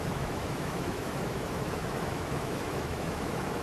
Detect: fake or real fake